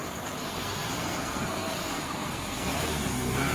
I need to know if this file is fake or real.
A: fake